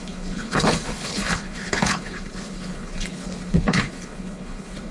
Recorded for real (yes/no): no